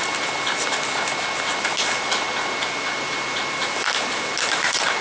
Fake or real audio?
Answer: real